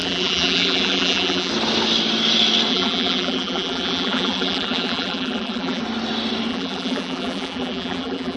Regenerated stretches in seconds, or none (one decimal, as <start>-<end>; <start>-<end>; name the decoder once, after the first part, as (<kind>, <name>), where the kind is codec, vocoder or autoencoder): 0.0-1.5 (vocoder, BigVGAN v2); 2.7-5.8; 6.5-8.4